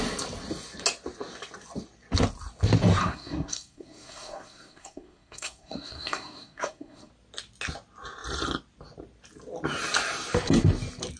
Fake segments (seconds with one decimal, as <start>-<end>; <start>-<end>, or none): 3.0-7.1